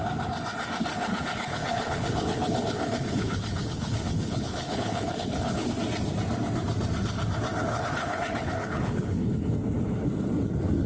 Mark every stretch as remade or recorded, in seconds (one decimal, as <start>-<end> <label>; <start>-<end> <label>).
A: 0.0-0.9 recorded; 0.9-5.7 remade; 5.7-7.7 recorded; 7.7-9.5 remade; 9.5-10.9 recorded

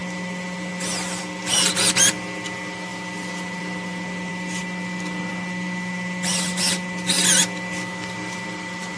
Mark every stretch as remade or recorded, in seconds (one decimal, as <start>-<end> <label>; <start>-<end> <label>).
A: 0.0-9.0 recorded

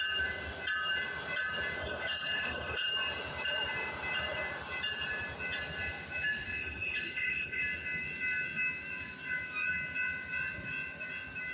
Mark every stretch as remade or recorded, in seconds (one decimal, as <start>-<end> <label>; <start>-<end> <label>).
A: 0.0-1.8 recorded; 1.8-2.9 remade; 2.9-6.6 recorded; 6.6-7.6 remade; 7.6-11.5 recorded

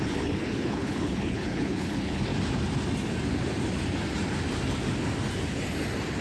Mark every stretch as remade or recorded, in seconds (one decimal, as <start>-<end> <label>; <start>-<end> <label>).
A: 0.0-2.3 remade; 2.3-6.2 recorded

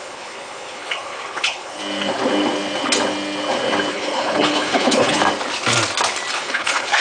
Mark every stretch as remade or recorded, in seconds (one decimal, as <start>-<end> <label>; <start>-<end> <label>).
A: 0.0-1.8 remade; 1.8-3.9 recorded; 3.9-5.2 remade; 5.2-6.3 recorded; 6.3-7.0 remade